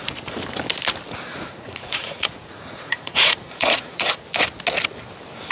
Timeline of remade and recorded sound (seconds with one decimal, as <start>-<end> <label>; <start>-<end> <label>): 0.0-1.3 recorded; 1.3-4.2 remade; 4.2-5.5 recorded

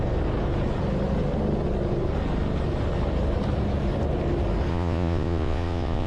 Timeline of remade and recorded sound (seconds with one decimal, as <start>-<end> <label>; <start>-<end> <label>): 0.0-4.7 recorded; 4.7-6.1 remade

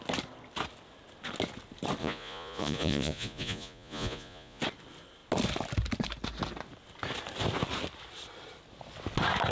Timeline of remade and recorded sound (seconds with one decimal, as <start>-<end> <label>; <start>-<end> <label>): 0.0-2.0 recorded; 2.0-4.6 remade; 4.6-9.5 recorded

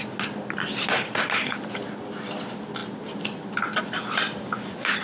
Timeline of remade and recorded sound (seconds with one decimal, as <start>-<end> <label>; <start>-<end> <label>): 0.0-5.0 recorded